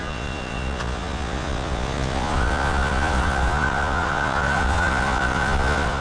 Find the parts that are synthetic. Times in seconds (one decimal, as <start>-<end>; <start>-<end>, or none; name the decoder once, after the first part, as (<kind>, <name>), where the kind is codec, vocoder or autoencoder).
0.0-6.0 (vocoder, Vocos)